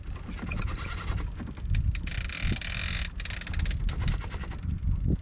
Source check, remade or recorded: recorded